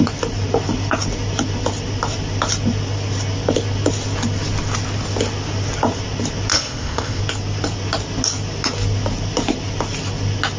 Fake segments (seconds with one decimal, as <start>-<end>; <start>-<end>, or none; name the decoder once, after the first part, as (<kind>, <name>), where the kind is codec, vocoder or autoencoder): 6.5-7.2 (codec, ZipCodec)